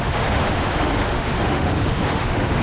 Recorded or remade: remade